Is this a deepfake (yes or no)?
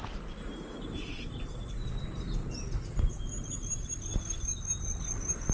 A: no